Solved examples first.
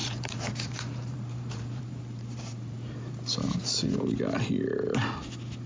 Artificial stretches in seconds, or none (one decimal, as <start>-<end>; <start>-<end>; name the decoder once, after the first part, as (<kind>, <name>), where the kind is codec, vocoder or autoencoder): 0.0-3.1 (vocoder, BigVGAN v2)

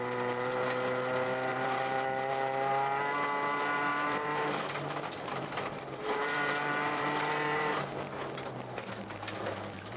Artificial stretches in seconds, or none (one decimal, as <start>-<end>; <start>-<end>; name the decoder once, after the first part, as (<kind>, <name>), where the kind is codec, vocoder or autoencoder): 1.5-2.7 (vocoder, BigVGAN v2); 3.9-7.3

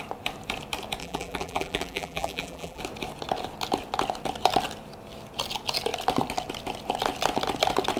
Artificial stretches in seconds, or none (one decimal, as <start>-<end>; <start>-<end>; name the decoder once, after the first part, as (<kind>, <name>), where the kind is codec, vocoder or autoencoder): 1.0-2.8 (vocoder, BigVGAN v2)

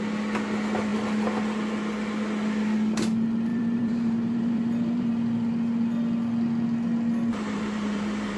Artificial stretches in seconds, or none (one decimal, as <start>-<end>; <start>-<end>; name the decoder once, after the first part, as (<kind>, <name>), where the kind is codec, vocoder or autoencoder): 3.5-5.1 (vocoder, BigVGAN v2); 7.3-8.4

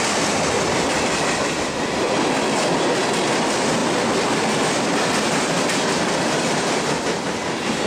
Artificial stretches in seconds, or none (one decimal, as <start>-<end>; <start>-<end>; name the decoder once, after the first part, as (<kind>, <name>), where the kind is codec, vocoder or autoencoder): 0.0-3.8 (vocoder, BigVGAN v2); 4.8-7.9

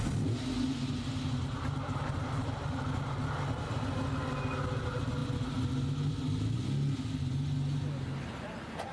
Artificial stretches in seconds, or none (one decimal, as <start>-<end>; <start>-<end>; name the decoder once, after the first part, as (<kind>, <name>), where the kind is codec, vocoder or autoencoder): none

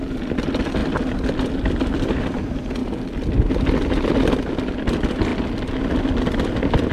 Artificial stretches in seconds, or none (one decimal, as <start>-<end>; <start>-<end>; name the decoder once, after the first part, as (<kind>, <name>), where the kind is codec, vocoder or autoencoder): none